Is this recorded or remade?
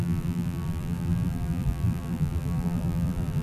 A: remade